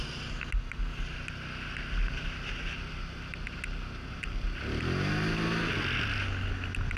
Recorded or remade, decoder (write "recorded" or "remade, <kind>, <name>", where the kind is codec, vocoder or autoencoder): recorded